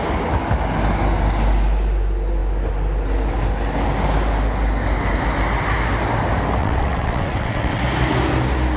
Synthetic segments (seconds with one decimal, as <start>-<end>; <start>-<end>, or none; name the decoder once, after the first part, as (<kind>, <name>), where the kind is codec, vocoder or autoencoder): 6.6-7.8 (vocoder, WaveNeXt)